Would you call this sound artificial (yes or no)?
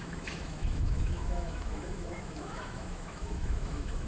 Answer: yes